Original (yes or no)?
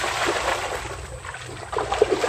yes